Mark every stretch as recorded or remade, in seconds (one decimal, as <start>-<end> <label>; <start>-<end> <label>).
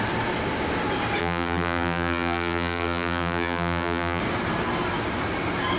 0.0-1.2 recorded; 1.2-4.2 remade; 4.2-5.8 recorded